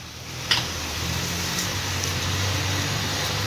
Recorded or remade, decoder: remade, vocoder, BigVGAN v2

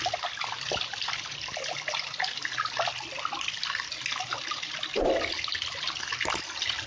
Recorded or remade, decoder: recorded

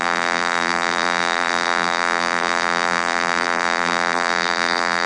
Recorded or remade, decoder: remade, vocoder, BigVGAN v2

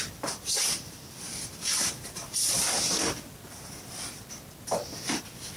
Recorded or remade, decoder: recorded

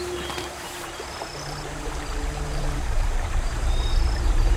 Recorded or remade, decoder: remade, vocoder, BigVGAN v2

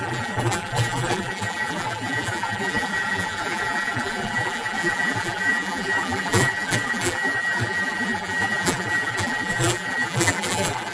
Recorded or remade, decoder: remade, vocoder, BigVGAN v2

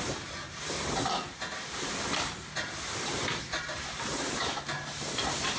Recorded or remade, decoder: remade, vocoder, BigVGAN v2